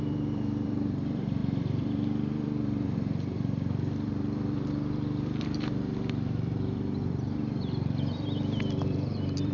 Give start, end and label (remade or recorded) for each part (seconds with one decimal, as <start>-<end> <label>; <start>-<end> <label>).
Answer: 0.0-9.5 remade